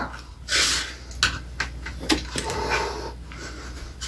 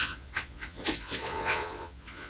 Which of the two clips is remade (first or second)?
second